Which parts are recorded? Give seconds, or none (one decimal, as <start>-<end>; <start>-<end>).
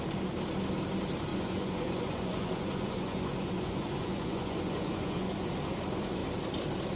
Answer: 0.0-1.3; 5.5-7.0